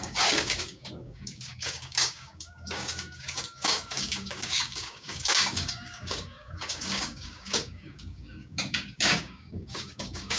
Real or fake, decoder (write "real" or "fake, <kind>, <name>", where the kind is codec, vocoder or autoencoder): fake, codec, DAC